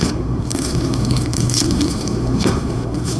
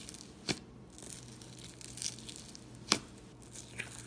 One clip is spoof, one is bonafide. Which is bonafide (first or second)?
second